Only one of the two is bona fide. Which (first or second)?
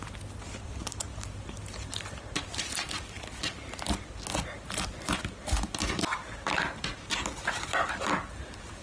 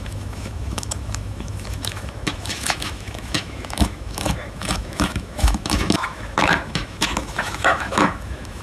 first